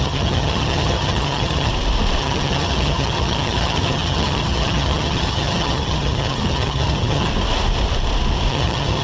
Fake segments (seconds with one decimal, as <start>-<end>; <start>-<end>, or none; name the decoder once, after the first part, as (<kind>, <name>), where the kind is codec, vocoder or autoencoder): 0.0-1.7 (vocoder, HiFi-GAN); 2.2-7.3; 8.5-9.0